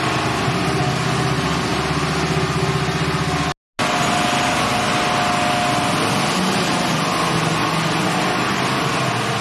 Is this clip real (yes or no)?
yes